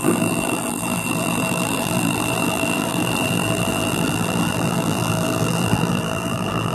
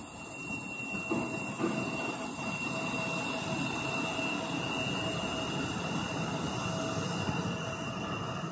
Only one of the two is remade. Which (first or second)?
first